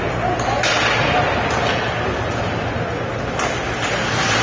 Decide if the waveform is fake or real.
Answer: real